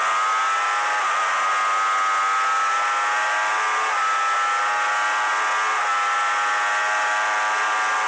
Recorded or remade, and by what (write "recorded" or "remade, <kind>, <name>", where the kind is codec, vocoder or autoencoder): recorded